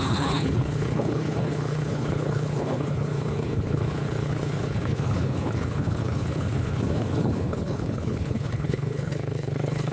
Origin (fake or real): fake